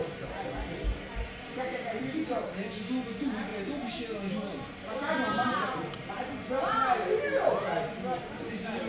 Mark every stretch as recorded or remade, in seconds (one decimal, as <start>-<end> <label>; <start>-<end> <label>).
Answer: 0.0-8.9 recorded